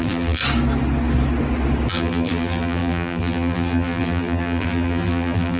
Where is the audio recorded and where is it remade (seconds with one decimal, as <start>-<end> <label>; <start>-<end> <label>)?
0.0-0.4 remade; 0.4-1.9 recorded; 1.9-5.6 remade